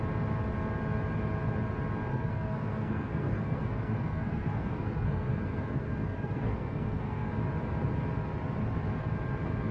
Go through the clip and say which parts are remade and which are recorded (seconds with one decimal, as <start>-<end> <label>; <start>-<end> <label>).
0.0-2.1 recorded; 2.1-7.3 remade; 7.3-9.7 recorded